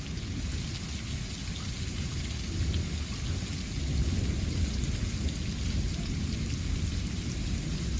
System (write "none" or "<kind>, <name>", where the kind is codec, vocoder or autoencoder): none